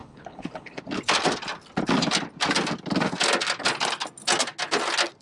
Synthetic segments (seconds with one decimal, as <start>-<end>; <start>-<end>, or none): 0.0-0.8